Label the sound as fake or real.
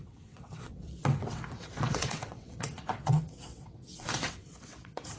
fake